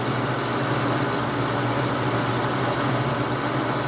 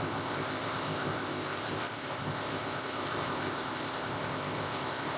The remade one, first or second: second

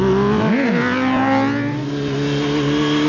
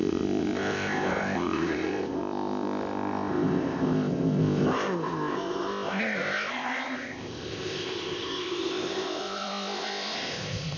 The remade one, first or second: second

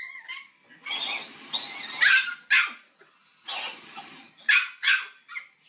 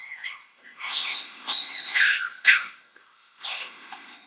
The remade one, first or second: second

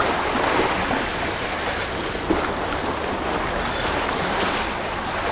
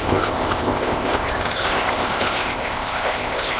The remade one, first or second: second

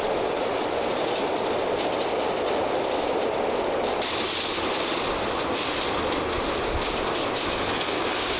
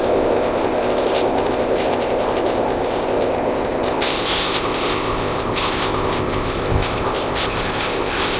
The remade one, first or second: second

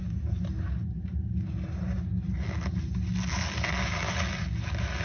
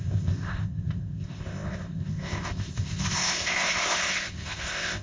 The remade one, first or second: second